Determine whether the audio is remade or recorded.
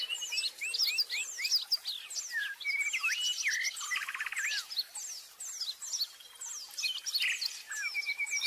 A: recorded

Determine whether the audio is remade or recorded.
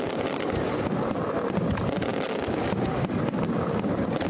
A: recorded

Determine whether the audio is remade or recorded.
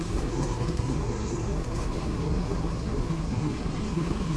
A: remade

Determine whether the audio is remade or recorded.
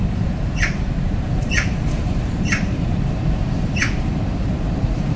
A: remade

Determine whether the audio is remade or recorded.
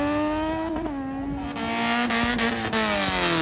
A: recorded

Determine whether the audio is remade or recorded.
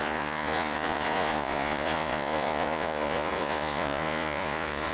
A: remade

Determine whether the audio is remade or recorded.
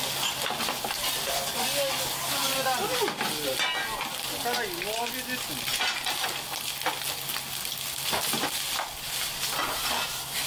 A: recorded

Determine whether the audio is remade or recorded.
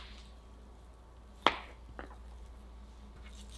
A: recorded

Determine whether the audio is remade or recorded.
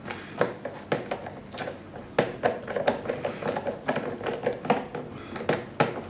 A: recorded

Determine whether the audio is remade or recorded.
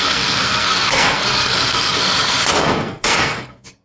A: remade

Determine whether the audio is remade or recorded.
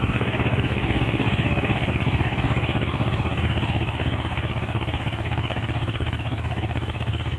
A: remade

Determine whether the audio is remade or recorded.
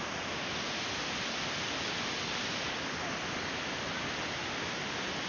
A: recorded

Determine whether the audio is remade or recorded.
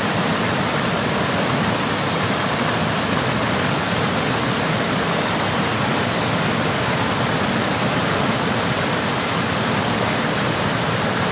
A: recorded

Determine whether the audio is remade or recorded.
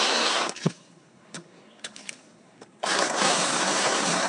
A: remade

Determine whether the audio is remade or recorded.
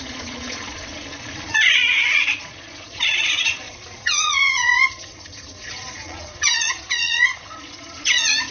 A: remade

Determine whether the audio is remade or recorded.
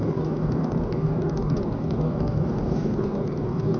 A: remade